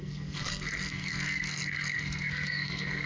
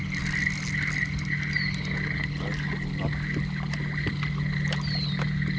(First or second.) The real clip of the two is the second